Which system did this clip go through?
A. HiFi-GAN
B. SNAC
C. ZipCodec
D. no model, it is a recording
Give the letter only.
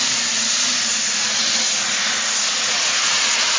D